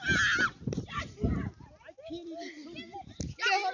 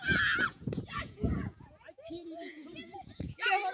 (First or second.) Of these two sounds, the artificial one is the second